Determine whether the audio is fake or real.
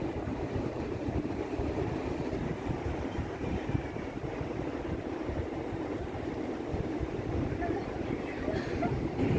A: fake